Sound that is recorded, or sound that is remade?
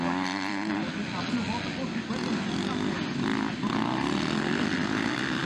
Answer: recorded